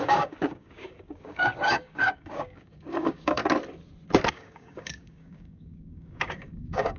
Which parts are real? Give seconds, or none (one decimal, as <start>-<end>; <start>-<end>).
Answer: 3.4-4.3